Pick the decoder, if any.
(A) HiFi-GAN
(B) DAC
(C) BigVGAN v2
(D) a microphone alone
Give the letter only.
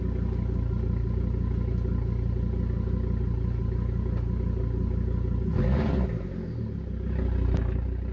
D